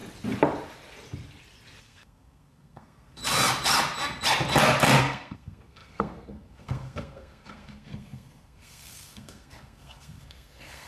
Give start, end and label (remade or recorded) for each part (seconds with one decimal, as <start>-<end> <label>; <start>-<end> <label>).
0.0-1.8 recorded; 1.8-3.2 remade; 3.2-5.0 recorded; 5.0-10.9 remade